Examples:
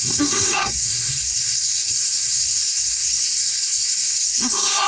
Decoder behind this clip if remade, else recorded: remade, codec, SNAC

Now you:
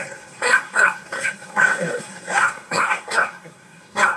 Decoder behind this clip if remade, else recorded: remade, codec, SNAC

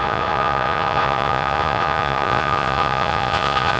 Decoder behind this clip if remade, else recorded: remade, vocoder, Vocos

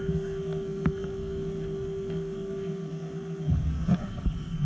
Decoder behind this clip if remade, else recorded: remade, codec, SNAC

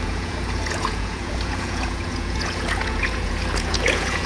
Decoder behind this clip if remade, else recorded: remade, vocoder, Vocos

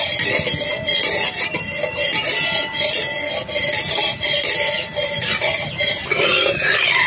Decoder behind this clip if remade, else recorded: recorded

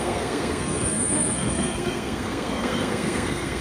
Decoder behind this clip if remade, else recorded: remade, codec, SNAC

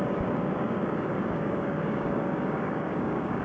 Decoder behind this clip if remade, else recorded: remade, codec, DAC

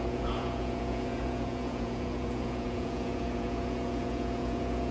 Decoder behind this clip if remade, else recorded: remade, vocoder, Vocos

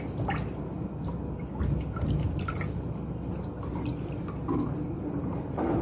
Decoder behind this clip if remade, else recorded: recorded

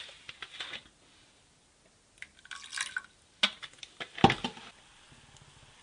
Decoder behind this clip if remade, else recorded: recorded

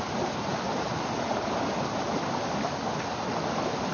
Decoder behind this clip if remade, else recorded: recorded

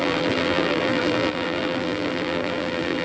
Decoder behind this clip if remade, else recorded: remade, vocoder, BigVGAN v2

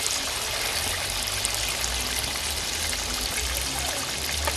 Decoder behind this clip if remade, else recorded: recorded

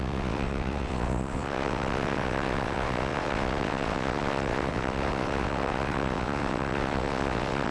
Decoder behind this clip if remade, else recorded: remade, vocoder, WaveNeXt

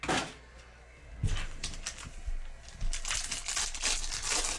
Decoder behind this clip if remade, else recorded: recorded